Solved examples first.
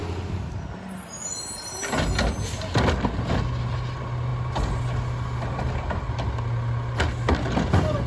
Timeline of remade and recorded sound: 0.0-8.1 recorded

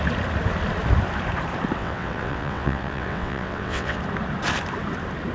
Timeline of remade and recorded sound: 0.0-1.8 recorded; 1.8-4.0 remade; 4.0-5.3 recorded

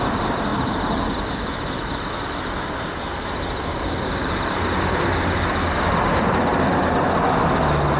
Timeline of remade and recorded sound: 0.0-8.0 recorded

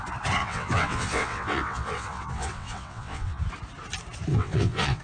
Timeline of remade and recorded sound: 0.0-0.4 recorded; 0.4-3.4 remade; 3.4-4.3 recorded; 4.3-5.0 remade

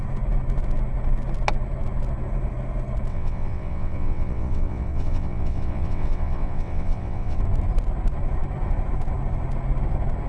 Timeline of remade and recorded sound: 0.0-3.1 recorded; 3.1-7.4 remade; 7.4-10.3 recorded

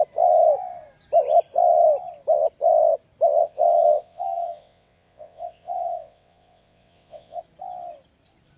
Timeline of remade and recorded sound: 0.0-3.4 recorded; 3.4-7.4 remade; 7.4-8.6 recorded

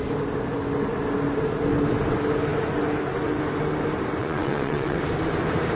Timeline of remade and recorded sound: 0.0-4.2 recorded; 4.2-5.0 remade; 5.0-5.8 recorded